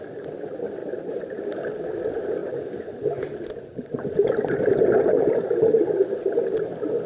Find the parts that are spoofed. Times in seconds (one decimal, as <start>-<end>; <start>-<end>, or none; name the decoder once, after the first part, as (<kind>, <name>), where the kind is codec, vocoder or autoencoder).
none